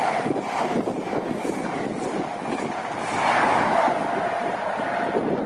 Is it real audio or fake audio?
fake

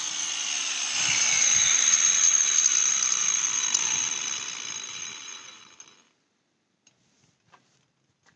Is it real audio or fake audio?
real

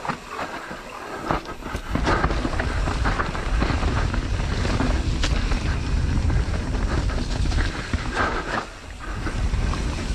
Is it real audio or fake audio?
real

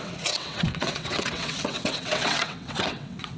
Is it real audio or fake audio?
fake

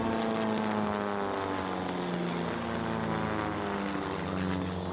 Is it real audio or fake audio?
real